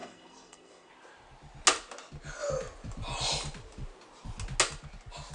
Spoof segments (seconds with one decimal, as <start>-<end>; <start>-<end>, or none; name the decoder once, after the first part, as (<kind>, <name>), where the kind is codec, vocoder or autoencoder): 0.0-0.9 (codec, SNAC)